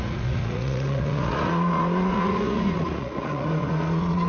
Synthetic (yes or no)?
yes